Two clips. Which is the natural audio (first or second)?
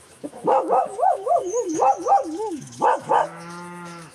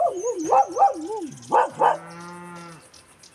second